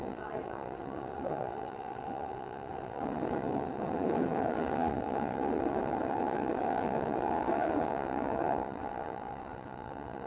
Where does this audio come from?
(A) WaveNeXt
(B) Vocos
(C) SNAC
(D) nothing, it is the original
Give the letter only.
A